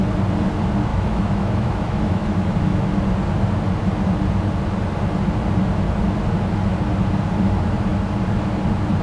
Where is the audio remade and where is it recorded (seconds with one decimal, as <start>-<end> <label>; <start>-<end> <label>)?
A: 0.0-0.9 recorded; 0.9-3.0 remade; 3.0-9.0 recorded